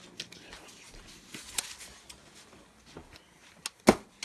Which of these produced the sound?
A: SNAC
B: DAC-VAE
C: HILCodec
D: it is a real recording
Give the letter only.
D